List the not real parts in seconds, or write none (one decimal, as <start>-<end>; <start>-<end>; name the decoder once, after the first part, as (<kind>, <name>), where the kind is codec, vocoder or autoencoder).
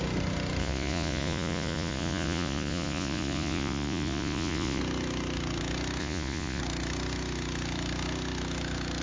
0.6-4.8 (vocoder, Vocos); 6.0-6.6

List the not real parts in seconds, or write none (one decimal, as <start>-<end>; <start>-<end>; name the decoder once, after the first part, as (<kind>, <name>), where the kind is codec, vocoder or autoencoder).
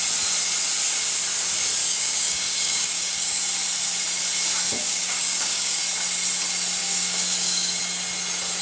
1.8-3.4 (codec, DAC); 4.8-5.8; 6.8-7.8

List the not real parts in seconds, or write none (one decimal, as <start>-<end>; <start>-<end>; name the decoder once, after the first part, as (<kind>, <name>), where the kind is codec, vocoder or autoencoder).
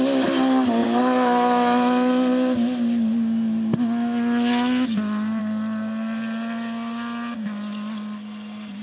none